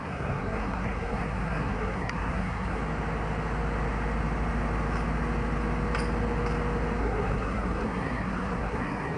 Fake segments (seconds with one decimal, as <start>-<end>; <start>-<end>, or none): 0.0-2.8; 7.0-9.2